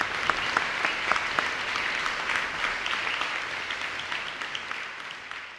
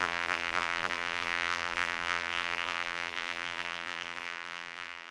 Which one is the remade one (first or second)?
second